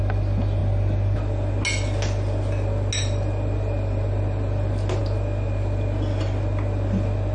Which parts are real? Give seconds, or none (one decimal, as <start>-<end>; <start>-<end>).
0.0-7.3